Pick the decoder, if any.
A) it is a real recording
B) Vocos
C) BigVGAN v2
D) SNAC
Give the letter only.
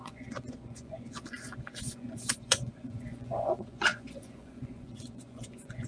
B